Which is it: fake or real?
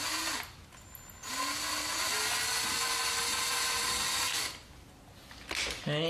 real